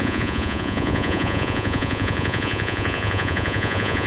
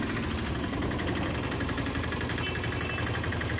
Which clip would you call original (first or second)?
second